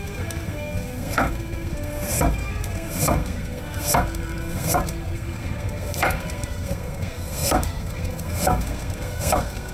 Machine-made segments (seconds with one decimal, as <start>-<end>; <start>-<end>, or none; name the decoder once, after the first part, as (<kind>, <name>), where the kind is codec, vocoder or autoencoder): 0.0-9.7 (codec, SNAC)